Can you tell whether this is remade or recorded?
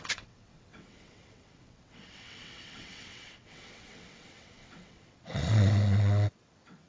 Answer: remade